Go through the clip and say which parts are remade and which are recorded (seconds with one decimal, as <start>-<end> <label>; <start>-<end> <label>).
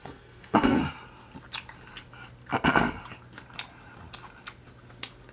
0.0-0.8 remade; 0.8-5.3 recorded